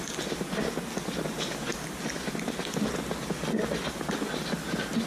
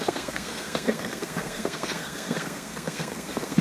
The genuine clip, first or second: first